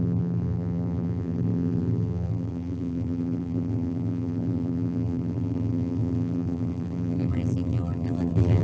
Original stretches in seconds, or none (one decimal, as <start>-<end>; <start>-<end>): none